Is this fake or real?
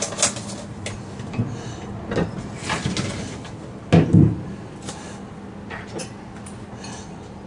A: real